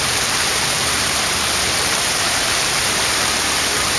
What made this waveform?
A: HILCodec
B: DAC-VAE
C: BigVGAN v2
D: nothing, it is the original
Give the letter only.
C